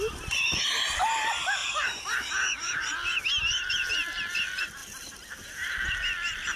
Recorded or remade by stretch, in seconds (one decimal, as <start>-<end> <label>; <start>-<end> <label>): 0.0-6.6 recorded